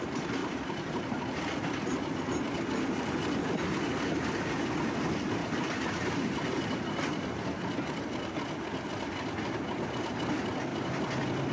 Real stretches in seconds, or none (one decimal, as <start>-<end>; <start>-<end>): 0.0-0.4; 1.4-5.4; 7.4-11.5